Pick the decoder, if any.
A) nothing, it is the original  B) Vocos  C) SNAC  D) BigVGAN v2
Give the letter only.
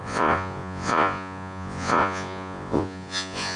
B